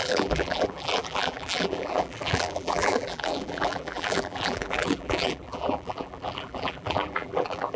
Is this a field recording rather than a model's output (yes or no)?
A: no